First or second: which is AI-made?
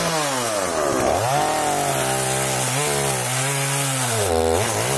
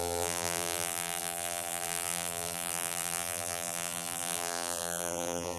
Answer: second